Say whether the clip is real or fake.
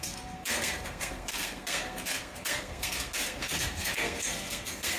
fake